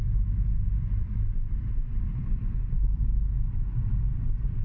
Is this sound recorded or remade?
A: remade